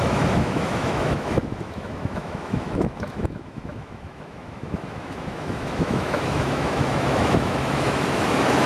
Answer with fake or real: fake